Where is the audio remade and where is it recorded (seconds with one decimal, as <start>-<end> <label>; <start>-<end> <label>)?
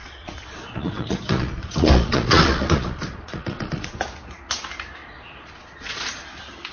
0.0-4.0 remade; 4.0-5.0 recorded; 5.0-6.2 remade; 6.2-6.7 recorded